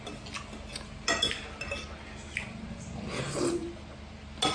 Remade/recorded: recorded